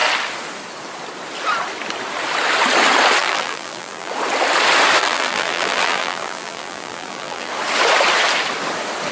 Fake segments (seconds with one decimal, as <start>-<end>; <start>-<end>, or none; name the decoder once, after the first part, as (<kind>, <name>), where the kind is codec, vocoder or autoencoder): 3.2-4.1 (vocoder, BigVGAN v2); 5.0-7.5